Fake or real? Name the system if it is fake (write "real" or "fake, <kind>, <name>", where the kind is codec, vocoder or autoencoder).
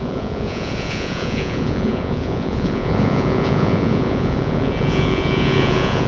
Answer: fake, vocoder, Vocos